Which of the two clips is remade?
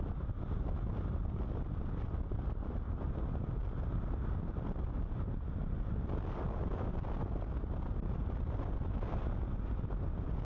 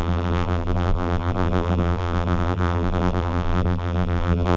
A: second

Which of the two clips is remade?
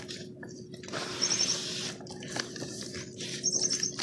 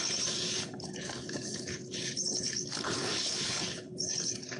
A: second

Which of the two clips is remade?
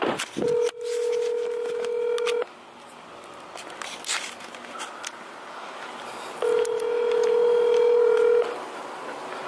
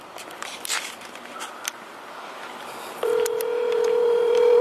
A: second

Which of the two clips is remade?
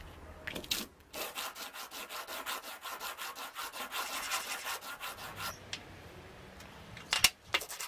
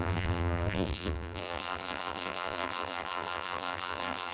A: second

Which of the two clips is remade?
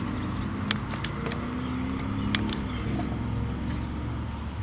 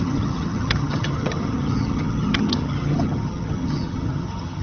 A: second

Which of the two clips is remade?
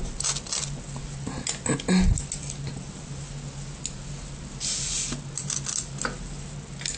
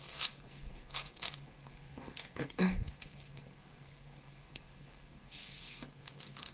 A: second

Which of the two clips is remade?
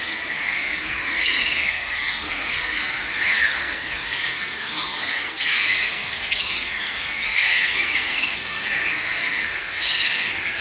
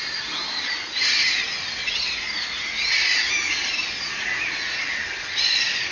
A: first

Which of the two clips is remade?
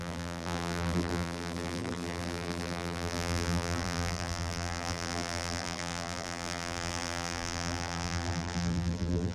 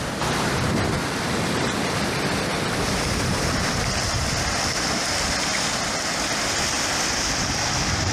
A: first